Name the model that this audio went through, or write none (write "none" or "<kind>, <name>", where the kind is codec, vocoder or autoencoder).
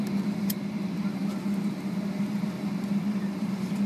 none